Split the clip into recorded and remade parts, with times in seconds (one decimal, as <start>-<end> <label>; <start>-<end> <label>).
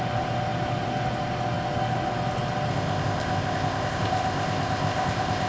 0.0-2.7 recorded; 2.7-5.5 remade